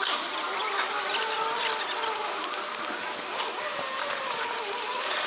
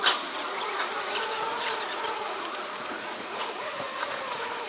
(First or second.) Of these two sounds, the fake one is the second